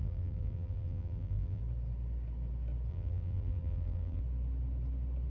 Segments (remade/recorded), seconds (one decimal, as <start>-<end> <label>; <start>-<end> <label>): 0.0-1.6 remade; 1.6-2.9 recorded; 2.9-4.2 remade; 4.2-5.3 recorded